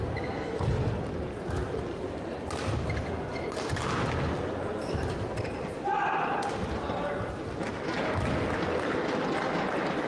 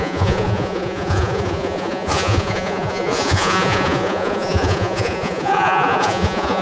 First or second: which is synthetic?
second